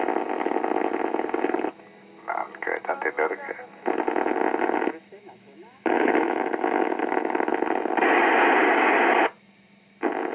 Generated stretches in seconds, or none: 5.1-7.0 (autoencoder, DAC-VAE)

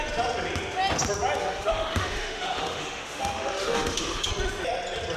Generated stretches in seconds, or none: 1.4-4.3 (autoencoder, DAC-VAE)

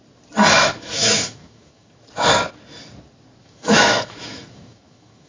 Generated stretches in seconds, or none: 0.6-1.9 (autoencoder, DAC-VAE); 3.4-5.3

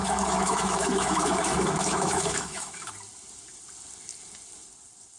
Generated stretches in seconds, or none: 0.0-2.9 (autoencoder, DAC-VAE)

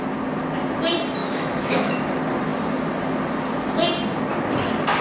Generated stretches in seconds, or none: 1.2-2.0 (autoencoder, DAC-VAE)

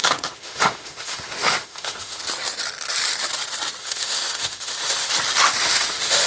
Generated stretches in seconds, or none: 0.0-2.2 (autoencoder, DAC-VAE); 3.8-5.1; 5.6-6.3

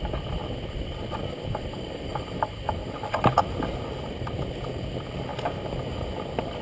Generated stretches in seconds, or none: none

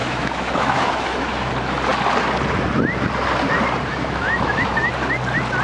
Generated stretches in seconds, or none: 0.0-1.5 (autoencoder, DAC-VAE); 3.9-4.9